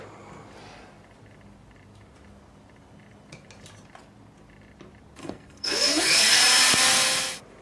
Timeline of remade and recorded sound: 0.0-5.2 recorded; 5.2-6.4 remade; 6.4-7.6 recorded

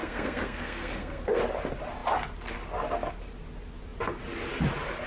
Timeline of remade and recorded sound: 0.0-1.4 remade; 1.4-5.1 recorded

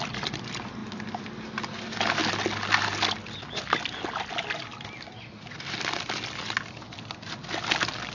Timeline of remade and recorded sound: 0.0-8.1 recorded

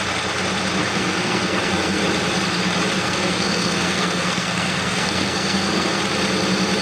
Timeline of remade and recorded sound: 0.0-0.8 recorded; 0.8-2.0 remade; 2.0-3.0 recorded; 3.0-6.0 remade; 6.0-6.8 recorded

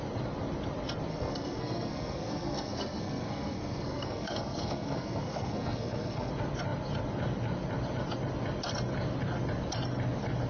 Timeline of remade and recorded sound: 0.0-1.1 recorded; 1.1-6.3 remade; 6.3-10.5 recorded

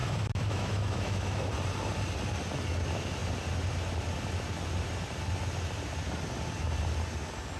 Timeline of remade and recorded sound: 0.0-1.5 remade; 1.5-7.6 recorded

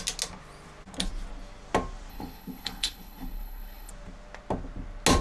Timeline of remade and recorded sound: 0.0-2.1 recorded; 2.1-3.9 remade; 3.9-5.2 recorded